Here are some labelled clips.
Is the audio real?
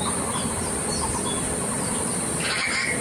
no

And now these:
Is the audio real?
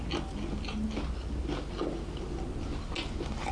yes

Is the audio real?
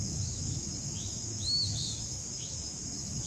no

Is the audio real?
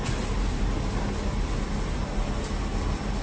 yes